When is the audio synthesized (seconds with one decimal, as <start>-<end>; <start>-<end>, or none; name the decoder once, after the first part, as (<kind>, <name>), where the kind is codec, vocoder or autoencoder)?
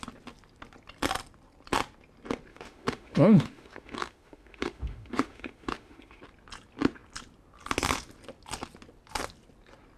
2.5-6.2 (autoencoder, DAC-VAE)